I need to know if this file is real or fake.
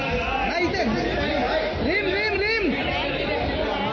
real